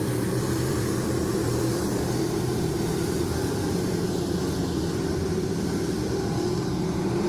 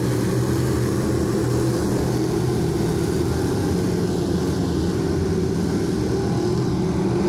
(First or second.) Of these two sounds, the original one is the second